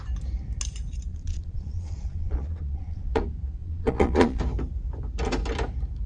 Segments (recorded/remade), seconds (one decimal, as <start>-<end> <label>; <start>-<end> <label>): 0.0-1.1 recorded; 1.1-3.2 remade; 3.2-3.6 recorded; 3.6-4.4 remade; 4.4-6.1 recorded